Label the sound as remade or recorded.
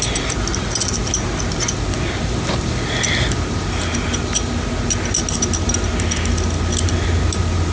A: recorded